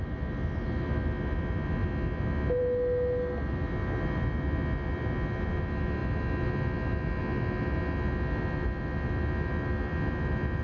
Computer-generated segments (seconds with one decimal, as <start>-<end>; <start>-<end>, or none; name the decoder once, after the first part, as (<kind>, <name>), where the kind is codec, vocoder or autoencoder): none

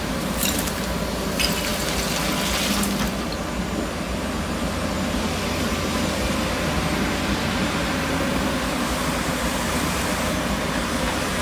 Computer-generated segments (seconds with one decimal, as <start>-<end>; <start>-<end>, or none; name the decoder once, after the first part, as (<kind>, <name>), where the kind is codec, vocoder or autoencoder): 0.0-1.7 (vocoder, BigVGAN v2); 5.1-11.4